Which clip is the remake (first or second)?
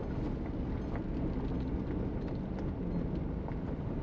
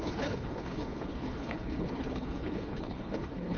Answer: second